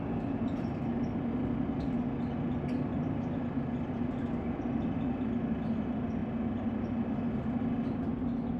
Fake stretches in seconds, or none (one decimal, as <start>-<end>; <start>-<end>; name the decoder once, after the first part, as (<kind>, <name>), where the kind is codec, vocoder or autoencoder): none